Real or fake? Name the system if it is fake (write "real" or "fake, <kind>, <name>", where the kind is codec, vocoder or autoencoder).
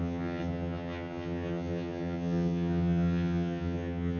fake, vocoder, HiFi-GAN